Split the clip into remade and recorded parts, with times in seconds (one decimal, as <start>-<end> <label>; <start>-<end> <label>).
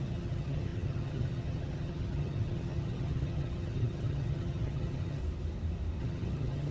0.0-5.2 remade; 5.2-6.0 recorded; 6.0-6.7 remade